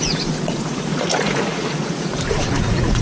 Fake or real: fake